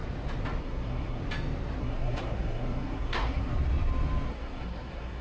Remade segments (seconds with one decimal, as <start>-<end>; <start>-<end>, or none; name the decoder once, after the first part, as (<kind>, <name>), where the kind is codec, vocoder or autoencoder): 0.6-1.2 (codec, SNAC); 1.8-3.5; 4.3-5.2